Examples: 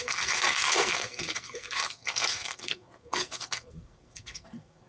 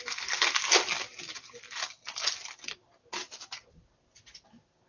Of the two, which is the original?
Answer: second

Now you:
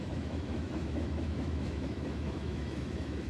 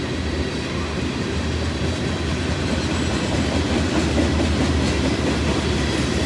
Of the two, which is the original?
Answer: second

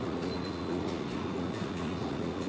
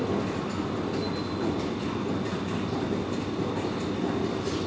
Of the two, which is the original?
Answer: second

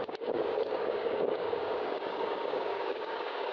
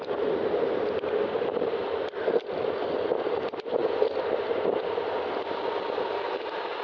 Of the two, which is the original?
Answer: second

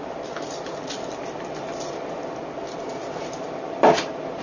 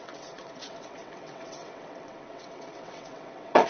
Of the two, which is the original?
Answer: first